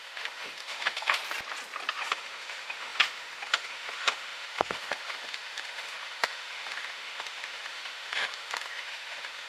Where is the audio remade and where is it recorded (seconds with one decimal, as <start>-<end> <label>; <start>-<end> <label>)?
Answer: 0.0-1.2 remade; 1.2-1.9 recorded; 1.9-9.5 remade